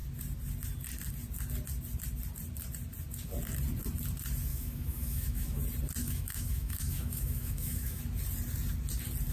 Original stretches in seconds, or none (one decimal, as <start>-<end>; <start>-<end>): 0.0-4.5; 5.6-6.0; 8.0-9.3